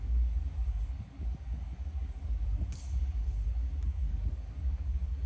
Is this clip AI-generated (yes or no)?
yes